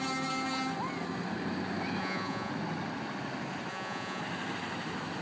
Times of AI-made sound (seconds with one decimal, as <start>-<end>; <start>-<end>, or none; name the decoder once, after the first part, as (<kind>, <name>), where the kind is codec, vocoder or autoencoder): 2.0-2.5 (vocoder, Vocos); 3.7-4.2